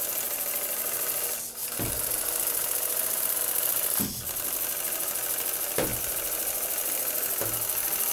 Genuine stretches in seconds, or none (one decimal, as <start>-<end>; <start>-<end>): 0.0-8.1